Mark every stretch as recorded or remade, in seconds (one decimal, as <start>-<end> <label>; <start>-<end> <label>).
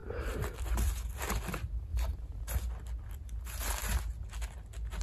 0.0-0.9 remade; 0.9-1.9 recorded; 1.9-2.5 remade; 2.5-5.0 recorded